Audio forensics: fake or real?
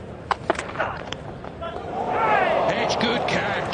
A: fake